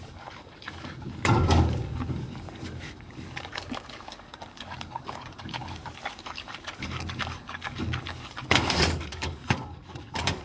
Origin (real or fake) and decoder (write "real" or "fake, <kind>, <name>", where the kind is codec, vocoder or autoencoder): fake, codec, DAC